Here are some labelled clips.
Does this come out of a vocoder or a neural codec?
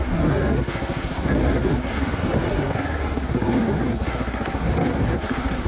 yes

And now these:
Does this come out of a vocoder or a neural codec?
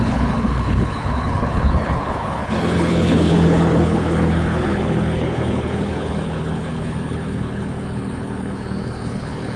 yes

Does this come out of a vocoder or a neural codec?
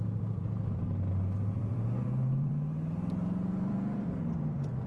yes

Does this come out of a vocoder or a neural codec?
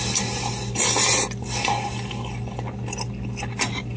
no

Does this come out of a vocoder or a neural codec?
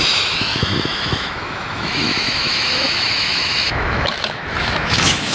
yes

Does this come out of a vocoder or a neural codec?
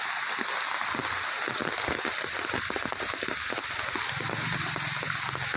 no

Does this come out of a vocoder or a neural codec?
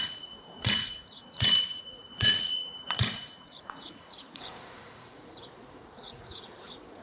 yes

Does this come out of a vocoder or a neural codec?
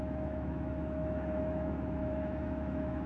yes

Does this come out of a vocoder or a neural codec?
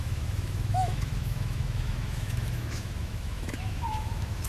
yes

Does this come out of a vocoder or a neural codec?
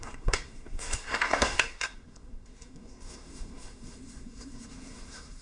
yes